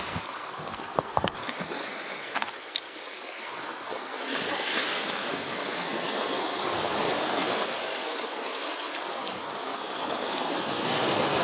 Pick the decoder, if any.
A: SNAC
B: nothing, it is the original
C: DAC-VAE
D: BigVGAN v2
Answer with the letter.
A